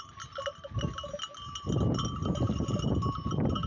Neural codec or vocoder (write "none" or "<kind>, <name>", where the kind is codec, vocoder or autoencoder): none